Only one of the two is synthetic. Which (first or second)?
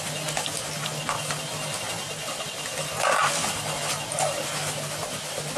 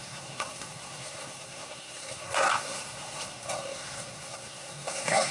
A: second